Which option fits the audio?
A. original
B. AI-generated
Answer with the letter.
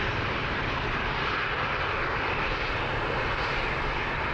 A